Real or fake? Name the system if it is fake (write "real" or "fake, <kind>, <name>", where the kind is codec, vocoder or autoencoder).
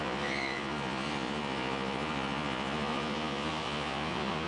fake, vocoder, Vocos